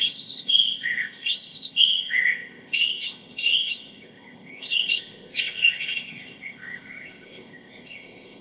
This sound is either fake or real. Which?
fake